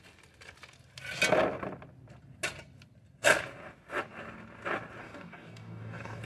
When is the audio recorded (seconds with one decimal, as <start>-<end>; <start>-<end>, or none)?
0.0-5.0